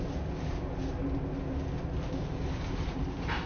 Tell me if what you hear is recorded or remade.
recorded